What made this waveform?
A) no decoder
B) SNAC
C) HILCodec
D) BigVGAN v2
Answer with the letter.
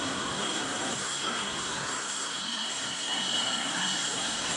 B